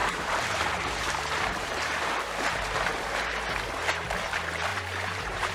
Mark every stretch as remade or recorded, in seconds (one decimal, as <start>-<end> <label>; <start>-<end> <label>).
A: 0.0-3.3 remade; 3.3-4.7 recorded; 4.7-5.5 remade